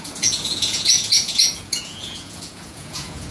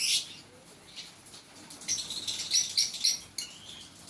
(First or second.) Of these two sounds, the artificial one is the first